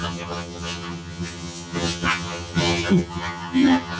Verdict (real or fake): fake